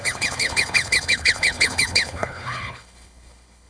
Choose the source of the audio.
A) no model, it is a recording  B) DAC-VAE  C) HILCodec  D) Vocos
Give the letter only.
C